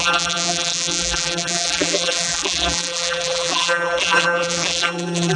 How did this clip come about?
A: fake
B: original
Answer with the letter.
A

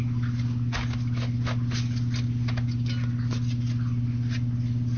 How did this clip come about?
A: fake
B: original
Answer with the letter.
B